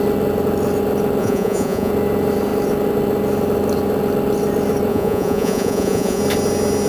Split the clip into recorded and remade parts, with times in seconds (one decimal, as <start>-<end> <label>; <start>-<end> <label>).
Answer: 0.0-1.2 recorded; 1.2-1.9 remade; 1.9-4.9 recorded; 4.9-6.2 remade; 6.2-6.9 recorded